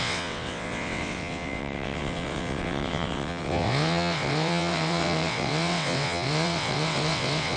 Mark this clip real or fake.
fake